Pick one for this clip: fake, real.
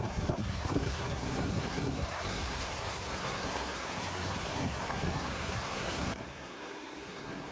fake